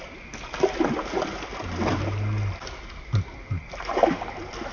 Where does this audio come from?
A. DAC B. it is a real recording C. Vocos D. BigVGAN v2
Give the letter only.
B